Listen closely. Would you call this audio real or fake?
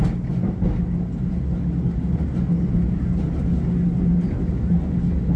real